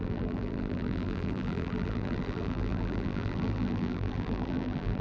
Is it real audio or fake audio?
fake